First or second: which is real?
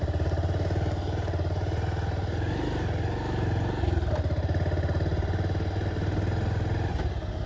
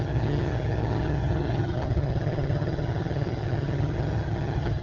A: first